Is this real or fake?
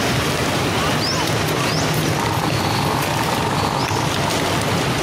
real